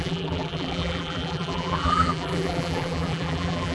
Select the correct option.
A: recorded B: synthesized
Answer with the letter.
B